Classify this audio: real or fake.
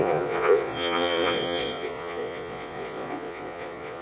fake